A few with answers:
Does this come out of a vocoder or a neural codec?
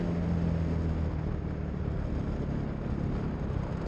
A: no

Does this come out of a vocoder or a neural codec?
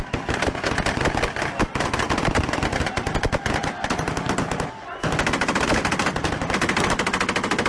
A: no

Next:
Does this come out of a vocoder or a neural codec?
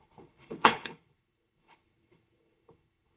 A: yes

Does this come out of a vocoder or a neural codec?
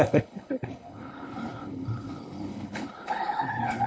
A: yes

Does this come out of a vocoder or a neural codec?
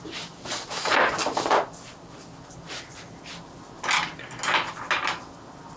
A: no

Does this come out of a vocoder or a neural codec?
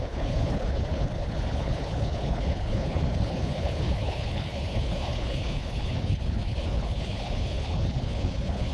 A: yes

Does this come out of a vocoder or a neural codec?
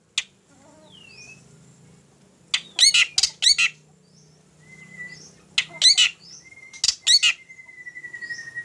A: no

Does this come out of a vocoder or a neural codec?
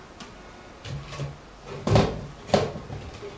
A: no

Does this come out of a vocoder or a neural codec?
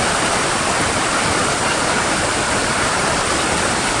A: no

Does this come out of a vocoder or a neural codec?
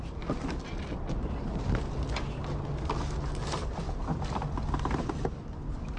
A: no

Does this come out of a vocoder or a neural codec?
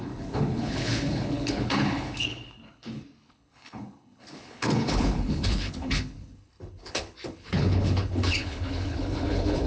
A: yes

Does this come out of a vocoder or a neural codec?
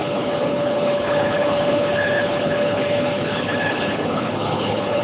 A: yes